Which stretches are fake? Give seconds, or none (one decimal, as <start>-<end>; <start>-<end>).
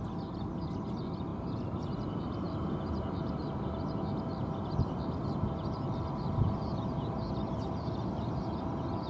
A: none